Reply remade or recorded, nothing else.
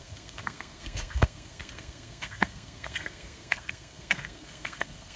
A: remade